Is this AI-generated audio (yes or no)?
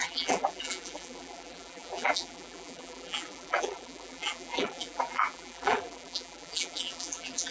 yes